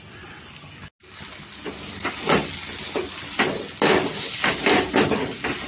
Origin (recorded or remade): recorded